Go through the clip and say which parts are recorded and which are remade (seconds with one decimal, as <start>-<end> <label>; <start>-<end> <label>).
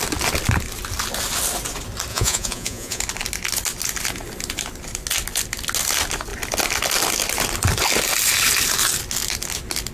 0.0-2.1 recorded; 2.1-3.0 remade; 3.0-9.9 recorded